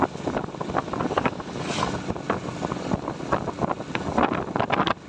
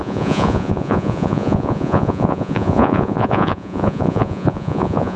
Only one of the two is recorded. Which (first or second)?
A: first